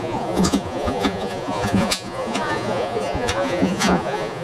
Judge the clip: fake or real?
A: fake